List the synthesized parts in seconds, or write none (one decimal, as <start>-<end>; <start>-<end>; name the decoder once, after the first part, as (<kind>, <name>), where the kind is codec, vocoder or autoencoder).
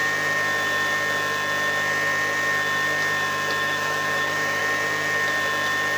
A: 3.6-4.6 (autoencoder, DAC-VAE)